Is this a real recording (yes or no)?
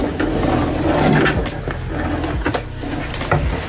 yes